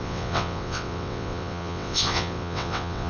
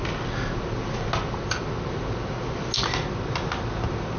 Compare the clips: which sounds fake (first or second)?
first